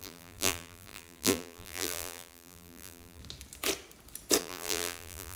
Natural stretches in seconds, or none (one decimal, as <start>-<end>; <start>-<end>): 3.2-4.4